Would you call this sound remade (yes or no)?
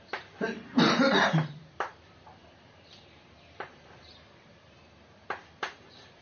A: yes